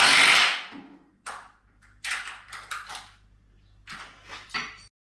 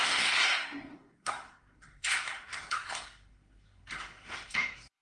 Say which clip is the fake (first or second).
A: second